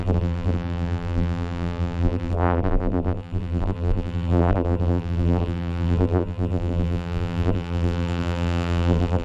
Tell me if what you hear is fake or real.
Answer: fake